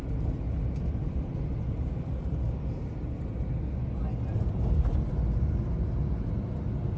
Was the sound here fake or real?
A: real